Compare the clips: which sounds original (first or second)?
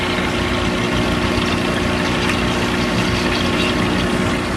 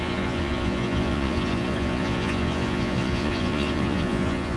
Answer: first